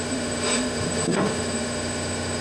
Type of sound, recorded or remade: remade